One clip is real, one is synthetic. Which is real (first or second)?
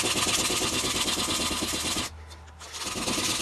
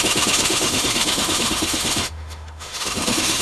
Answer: first